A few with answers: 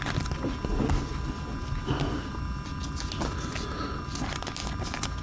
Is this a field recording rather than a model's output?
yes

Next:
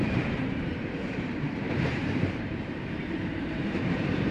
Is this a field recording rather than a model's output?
no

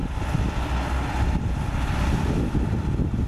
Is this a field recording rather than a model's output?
yes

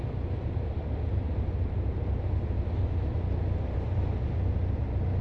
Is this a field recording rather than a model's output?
yes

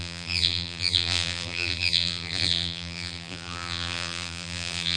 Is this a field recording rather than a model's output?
no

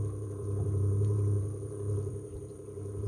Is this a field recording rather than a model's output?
no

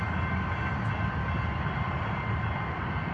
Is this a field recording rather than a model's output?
yes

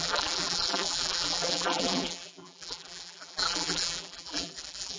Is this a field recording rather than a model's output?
no